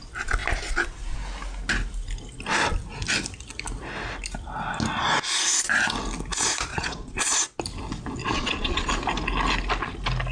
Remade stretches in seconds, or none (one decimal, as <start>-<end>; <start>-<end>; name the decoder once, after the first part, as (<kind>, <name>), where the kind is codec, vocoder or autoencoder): 6.7-7.4 (vocoder, Vocos); 8.2-8.9

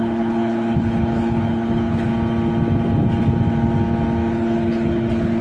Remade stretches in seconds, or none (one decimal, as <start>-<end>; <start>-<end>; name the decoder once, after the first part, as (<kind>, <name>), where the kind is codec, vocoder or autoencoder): 0.0-2.1 (codec, HILCodec); 4.3-5.4

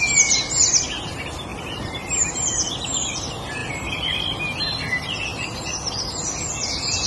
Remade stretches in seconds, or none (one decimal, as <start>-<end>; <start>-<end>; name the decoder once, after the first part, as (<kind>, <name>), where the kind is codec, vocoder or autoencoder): 1.5-2.8 (vocoder, BigVGAN v2); 3.6-4.2